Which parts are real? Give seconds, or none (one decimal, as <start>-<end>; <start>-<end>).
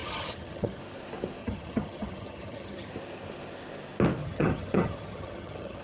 0.8-1.4; 2.9-4.2